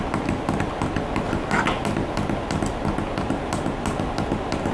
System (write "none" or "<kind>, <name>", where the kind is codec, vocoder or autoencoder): none